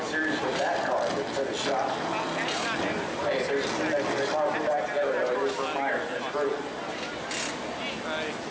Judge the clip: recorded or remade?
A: recorded